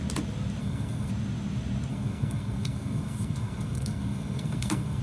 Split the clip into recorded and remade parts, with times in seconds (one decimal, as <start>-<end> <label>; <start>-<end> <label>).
0.0-0.6 recorded; 0.6-1.1 remade; 1.1-1.9 recorded; 1.9-5.0 remade